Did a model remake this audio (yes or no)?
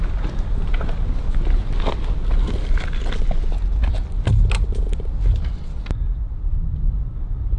no